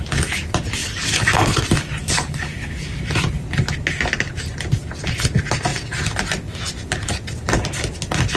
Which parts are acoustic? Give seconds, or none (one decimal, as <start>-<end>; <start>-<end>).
0.0-0.8; 1.6-2.0; 3.0-8.4